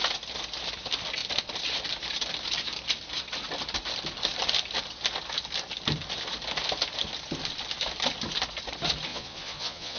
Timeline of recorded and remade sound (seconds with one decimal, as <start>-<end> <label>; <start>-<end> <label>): 0.0-9.1 recorded; 9.1-10.0 remade